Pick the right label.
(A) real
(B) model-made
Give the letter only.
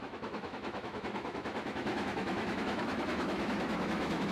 B